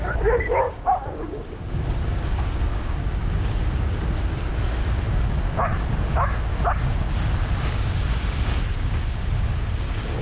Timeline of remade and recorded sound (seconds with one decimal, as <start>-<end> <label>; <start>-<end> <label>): 0.0-4.5 remade; 4.5-5.3 recorded; 5.3-5.7 remade; 5.7-7.6 recorded; 7.6-10.2 remade